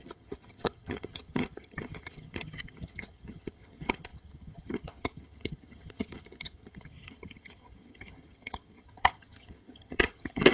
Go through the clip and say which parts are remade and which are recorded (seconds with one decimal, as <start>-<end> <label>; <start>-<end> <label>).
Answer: 0.0-10.5 remade